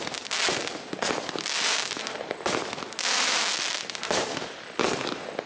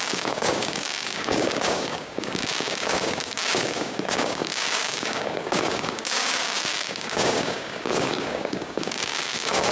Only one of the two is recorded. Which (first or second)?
first